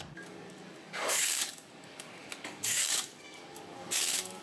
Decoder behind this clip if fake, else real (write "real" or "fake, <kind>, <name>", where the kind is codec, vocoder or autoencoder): fake, codec, DAC